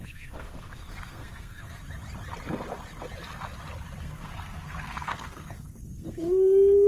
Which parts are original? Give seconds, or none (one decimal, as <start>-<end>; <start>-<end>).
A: 1.8-4.0